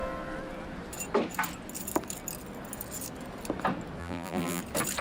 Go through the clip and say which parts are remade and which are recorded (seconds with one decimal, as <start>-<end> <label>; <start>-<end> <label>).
0.0-4.0 recorded; 4.0-4.6 remade; 4.6-5.0 recorded